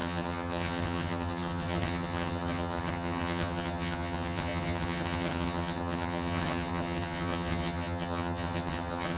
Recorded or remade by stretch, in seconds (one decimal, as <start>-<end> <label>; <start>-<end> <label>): 0.0-9.2 remade